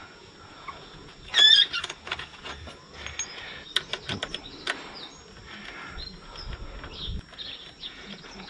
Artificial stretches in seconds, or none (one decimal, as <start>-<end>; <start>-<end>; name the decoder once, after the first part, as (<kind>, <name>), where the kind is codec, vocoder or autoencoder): 0.0-1.3 (vocoder, Vocos); 1.8-2.9; 7.9-8.5